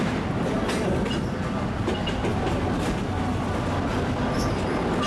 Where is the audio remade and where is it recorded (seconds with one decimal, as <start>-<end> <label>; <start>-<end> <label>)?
0.0-5.1 recorded